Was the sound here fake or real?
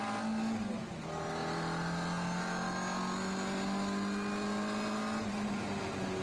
real